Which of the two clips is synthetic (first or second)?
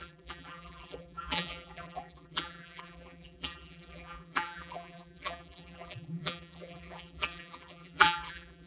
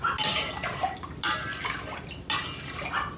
first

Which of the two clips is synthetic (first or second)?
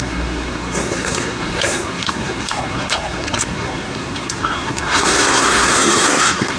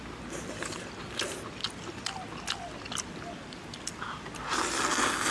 first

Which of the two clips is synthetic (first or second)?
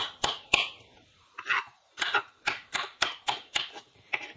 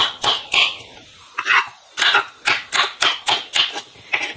first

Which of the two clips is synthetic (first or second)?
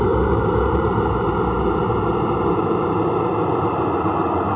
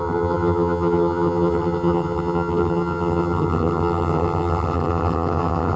second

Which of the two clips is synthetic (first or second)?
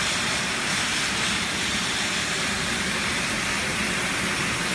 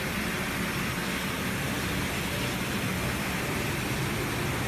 first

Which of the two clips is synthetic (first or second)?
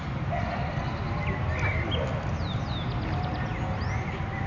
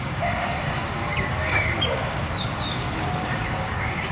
second